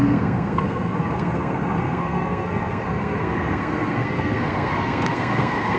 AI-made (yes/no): yes